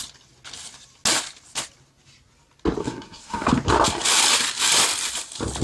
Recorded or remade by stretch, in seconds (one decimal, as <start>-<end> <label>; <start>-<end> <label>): 0.0-2.8 recorded; 2.8-3.5 remade; 3.5-5.6 recorded